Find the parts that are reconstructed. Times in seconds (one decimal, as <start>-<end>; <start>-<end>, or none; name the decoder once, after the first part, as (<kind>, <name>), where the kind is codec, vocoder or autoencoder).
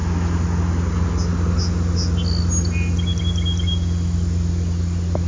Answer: none